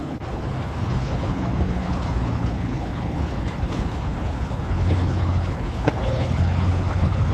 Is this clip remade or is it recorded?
remade